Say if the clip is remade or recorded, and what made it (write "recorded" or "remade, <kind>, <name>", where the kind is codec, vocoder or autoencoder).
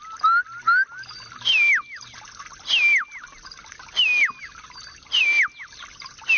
recorded